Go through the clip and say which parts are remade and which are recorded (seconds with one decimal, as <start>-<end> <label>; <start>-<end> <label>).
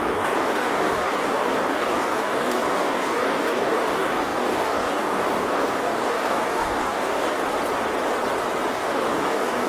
0.0-7.4 remade; 7.4-8.7 recorded; 8.7-9.7 remade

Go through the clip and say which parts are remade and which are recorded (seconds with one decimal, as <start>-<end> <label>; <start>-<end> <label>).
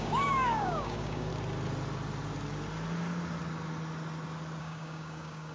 0.0-1.3 remade; 1.3-4.6 recorded; 4.6-5.5 remade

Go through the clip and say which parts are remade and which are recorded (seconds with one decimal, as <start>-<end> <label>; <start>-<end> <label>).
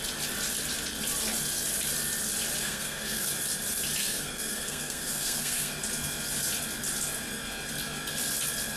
0.0-2.6 recorded; 2.6-3.3 remade; 3.3-4.0 recorded; 4.0-5.7 remade; 5.7-8.8 recorded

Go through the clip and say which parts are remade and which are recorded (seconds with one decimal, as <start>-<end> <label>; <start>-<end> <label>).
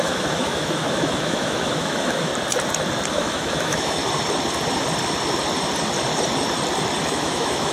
0.0-2.3 remade; 2.3-3.1 recorded; 3.1-4.0 remade; 4.0-7.0 recorded; 7.0-7.7 remade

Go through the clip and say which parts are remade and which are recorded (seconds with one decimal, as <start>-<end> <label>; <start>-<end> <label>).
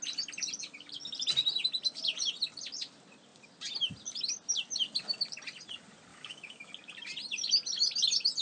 0.0-6.1 recorded; 6.1-6.7 remade; 6.7-8.4 recorded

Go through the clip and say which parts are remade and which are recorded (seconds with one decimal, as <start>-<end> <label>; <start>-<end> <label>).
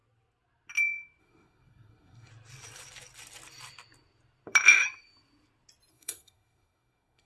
0.0-1.2 recorded; 1.2-2.3 remade; 2.3-5.9 recorded; 5.9-7.3 remade